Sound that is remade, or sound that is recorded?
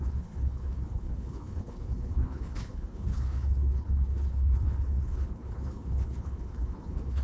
remade